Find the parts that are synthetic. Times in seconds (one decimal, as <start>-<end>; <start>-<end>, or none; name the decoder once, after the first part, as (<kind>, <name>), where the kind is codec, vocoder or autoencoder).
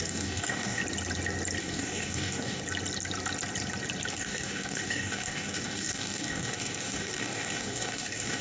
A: 0.0-0.8 (codec, DAC); 1.6-2.6; 4.1-8.4